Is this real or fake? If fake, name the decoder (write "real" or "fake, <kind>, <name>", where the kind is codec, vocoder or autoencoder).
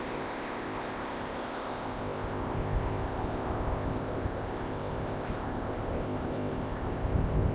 fake, codec, ZipCodec